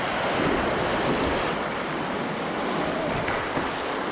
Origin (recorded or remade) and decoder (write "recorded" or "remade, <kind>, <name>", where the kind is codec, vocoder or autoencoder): recorded